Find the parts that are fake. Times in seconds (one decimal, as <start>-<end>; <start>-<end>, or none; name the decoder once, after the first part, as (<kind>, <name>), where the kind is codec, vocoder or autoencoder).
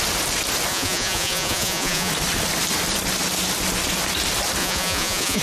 0.7-2.1 (vocoder, Vocos); 4.6-5.4